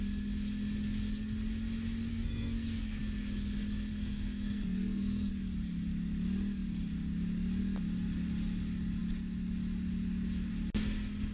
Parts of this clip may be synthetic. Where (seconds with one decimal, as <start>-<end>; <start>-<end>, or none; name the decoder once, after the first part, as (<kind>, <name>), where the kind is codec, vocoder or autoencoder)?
2.1-3.0 (codec, SNAC); 3.9-5.3

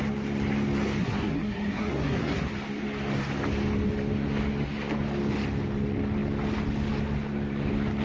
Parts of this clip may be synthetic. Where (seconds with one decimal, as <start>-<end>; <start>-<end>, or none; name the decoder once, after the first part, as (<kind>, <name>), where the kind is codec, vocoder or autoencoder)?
1.0-2.5 (codec, SNAC)

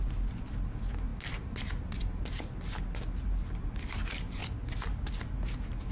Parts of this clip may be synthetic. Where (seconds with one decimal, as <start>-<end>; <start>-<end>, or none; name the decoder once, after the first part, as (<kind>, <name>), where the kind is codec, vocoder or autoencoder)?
none